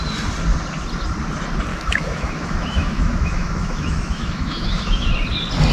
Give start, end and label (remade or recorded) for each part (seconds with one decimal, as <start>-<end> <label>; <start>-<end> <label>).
0.0-1.7 recorded; 1.7-5.1 remade; 5.1-5.7 recorded